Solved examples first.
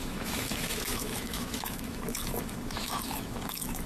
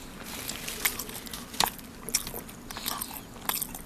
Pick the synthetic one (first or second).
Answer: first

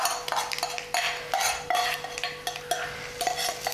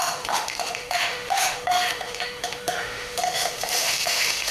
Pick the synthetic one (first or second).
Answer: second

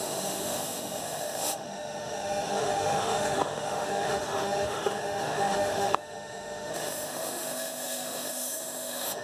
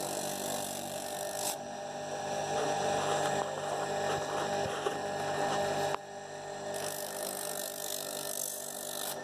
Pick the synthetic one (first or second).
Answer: first